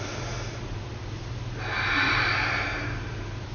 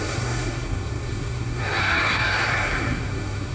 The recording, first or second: first